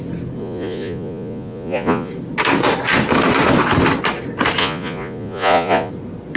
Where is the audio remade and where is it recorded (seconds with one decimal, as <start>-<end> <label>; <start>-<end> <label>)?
0.0-0.4 recorded; 0.4-2.1 remade; 2.1-4.6 recorded; 4.6-5.9 remade; 5.9-6.4 recorded